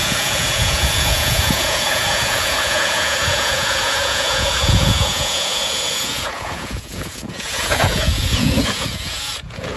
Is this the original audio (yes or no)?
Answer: no